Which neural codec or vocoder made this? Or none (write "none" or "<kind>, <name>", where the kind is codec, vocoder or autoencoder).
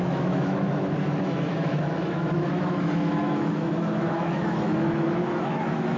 autoencoder, DAC-VAE